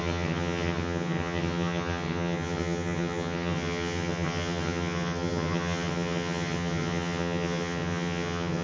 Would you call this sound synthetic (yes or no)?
yes